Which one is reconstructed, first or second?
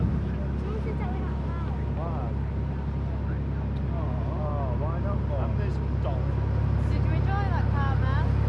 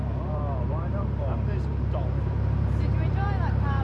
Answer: second